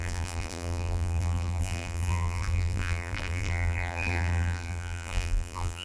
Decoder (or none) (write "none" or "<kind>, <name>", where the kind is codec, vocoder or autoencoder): vocoder, BigVGAN v2